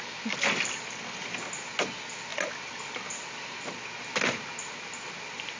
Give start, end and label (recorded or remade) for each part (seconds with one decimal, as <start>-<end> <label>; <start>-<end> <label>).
0.0-5.6 recorded